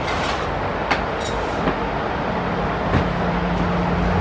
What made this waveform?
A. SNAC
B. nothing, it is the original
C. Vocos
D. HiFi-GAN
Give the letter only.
B